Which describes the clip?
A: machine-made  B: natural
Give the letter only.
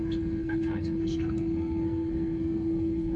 A